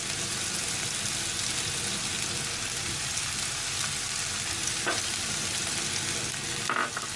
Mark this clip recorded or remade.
recorded